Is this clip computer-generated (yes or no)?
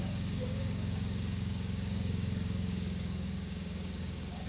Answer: yes